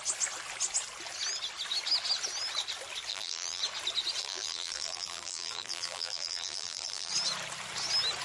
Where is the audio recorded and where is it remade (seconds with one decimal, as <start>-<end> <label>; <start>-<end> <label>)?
0.0-3.1 recorded; 3.1-3.6 remade; 3.6-4.2 recorded; 4.2-7.1 remade; 7.1-8.2 recorded